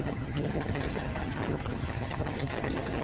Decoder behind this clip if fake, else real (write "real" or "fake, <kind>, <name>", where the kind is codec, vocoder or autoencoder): fake, vocoder, HiFi-GAN